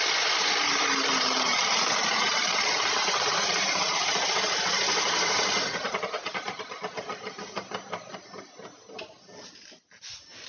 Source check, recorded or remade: recorded